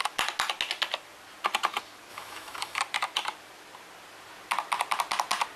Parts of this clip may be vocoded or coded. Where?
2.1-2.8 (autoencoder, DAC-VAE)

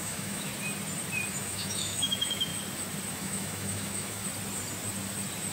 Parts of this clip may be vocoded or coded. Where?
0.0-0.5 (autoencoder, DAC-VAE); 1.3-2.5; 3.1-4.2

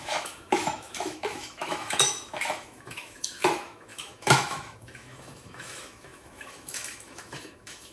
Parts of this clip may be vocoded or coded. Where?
0.0-7.9 (autoencoder, DAC-VAE)

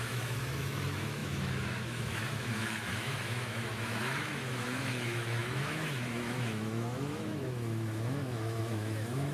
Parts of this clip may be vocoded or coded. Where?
0.0-9.3 (autoencoder, DAC-VAE)

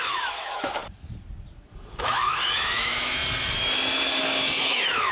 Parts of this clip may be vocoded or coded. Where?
0.0-0.8 (autoencoder, DAC-VAE); 2.0-3.2; 4.2-5.1

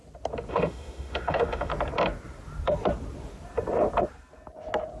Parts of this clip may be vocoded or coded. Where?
0.5-1.7 (autoencoder, DAC-VAE)